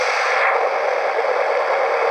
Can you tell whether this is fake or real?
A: real